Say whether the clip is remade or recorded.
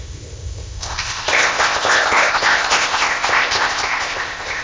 remade